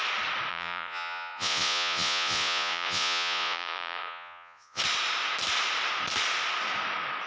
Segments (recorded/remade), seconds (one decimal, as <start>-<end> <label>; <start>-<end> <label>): 0.0-0.5 recorded; 0.5-4.8 remade; 4.8-7.3 recorded